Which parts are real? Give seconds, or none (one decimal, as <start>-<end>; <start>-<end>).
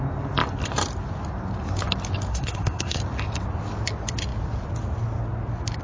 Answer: 0.0-2.3; 3.0-5.8